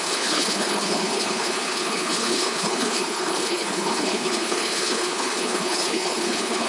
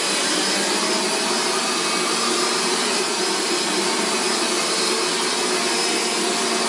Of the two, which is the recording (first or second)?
second